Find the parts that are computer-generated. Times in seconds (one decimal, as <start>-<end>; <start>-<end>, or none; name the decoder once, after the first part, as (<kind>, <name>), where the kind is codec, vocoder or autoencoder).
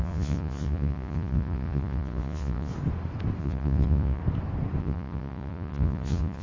0.0-2.7 (vocoder, Vocos); 3.4-4.2; 4.8-6.4